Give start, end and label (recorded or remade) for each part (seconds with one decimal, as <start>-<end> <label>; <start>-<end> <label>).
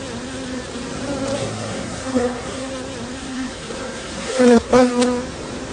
0.0-1.4 recorded; 1.4-2.7 remade; 2.7-3.2 recorded; 3.2-4.9 remade; 4.9-5.7 recorded